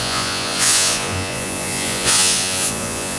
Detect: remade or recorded remade